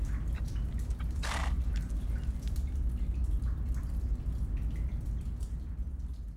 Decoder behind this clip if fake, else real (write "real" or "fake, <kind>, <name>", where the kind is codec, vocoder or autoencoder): real